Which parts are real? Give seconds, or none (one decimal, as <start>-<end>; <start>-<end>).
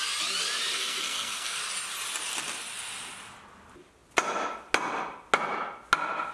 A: 0.0-0.7; 1.6-6.3